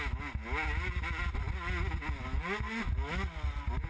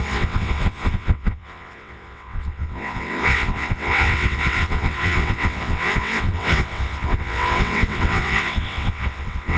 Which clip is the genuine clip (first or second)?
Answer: first